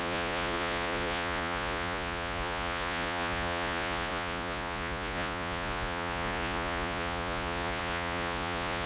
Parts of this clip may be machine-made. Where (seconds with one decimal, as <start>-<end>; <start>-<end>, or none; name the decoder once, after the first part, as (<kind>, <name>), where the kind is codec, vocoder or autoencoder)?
0.0-8.9 (vocoder, Vocos)